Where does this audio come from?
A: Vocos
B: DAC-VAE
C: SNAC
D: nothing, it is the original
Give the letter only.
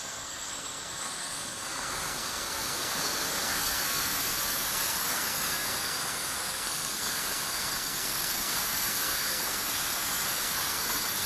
C